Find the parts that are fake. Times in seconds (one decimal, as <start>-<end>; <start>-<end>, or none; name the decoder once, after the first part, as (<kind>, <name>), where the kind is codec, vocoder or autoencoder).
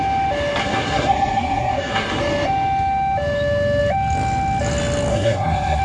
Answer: 0.6-2.2 (codec, SNAC); 5.1-5.8